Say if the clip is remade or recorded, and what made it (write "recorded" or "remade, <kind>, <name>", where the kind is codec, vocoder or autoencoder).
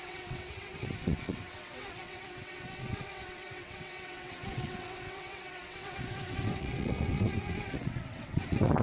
remade, vocoder, WaveNeXt